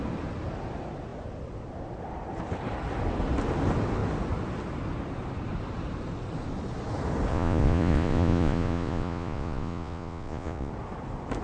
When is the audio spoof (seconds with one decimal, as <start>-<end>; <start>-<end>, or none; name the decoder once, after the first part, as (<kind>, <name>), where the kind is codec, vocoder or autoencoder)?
7.3-10.7 (vocoder, Vocos)